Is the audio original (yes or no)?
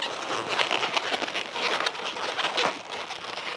yes